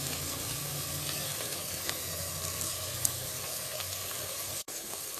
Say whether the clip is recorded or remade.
remade